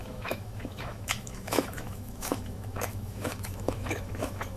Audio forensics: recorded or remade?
remade